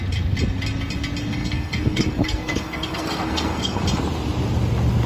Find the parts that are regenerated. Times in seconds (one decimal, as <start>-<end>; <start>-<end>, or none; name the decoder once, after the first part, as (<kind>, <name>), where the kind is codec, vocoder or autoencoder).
1.3-3.8 (codec, SNAC)